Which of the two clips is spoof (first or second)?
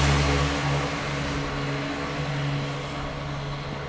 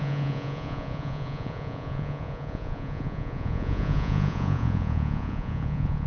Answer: second